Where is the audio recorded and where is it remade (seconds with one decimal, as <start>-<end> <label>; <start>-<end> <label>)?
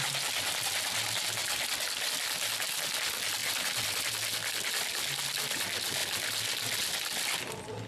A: 0.0-3.4 recorded; 3.4-4.1 remade; 4.1-6.0 recorded; 6.0-7.4 remade; 7.4-7.9 recorded